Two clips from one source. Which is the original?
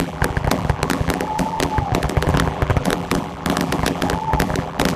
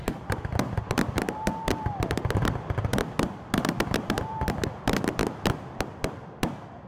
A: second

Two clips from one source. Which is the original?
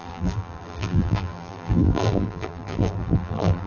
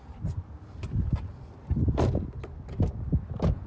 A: second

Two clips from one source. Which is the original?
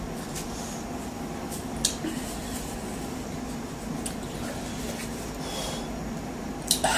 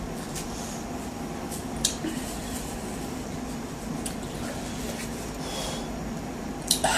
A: first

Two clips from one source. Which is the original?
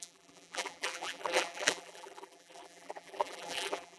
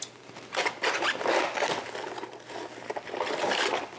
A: second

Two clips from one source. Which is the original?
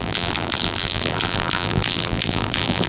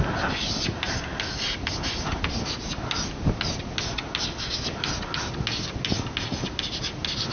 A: second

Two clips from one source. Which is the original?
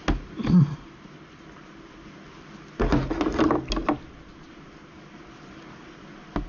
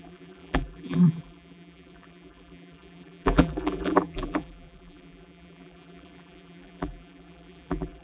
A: first